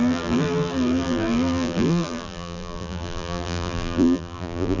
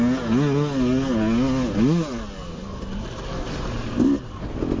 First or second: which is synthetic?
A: first